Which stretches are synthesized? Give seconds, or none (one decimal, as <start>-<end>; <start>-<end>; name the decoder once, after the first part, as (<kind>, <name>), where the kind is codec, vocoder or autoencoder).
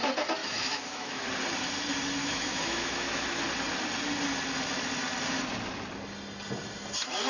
0.4-1.2 (autoencoder, DAC-VAE); 2.2-3.4